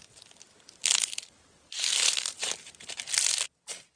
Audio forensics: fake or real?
real